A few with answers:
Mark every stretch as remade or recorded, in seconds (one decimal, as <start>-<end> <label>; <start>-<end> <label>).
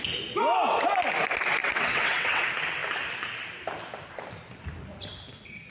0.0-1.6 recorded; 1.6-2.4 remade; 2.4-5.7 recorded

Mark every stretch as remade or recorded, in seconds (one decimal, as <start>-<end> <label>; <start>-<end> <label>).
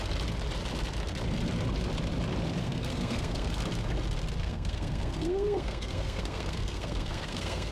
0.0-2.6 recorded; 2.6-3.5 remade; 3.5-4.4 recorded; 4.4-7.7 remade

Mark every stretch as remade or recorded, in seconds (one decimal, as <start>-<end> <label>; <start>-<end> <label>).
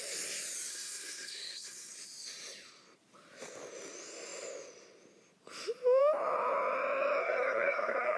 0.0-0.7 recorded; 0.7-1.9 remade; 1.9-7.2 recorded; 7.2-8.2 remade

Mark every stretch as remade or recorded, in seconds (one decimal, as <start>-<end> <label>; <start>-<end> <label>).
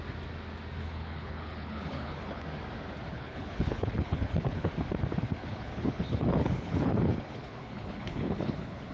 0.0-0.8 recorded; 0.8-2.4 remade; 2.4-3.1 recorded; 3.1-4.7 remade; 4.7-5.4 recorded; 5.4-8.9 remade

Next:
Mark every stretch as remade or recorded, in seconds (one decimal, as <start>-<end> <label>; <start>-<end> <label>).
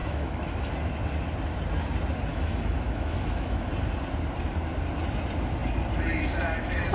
0.0-0.7 remade; 0.7-2.3 recorded; 2.3-3.7 remade; 3.7-6.9 recorded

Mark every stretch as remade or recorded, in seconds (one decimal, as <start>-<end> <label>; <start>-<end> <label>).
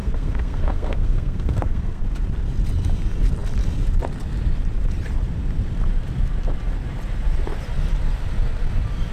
0.0-2.0 remade; 2.0-9.1 recorded